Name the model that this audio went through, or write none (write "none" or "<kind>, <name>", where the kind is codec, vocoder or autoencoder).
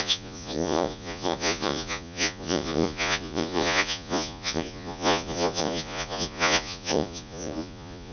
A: vocoder, Vocos